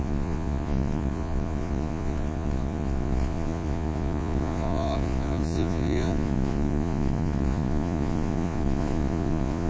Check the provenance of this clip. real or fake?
fake